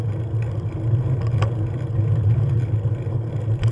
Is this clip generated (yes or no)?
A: no